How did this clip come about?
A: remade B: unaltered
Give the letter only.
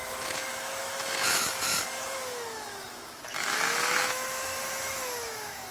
A